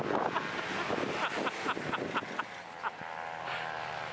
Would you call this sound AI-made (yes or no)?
no